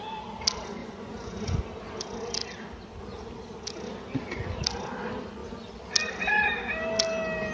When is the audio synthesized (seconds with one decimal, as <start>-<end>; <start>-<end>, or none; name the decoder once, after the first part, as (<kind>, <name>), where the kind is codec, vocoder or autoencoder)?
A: 0.8-1.6 (vocoder, Vocos)